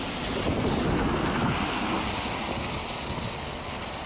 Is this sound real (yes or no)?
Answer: yes